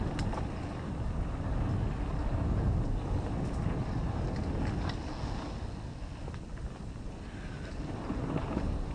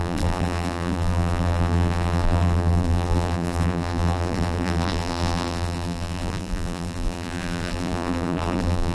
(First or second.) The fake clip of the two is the second